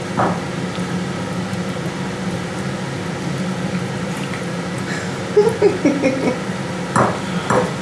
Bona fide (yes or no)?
yes